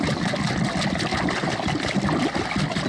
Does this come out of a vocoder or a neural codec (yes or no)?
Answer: no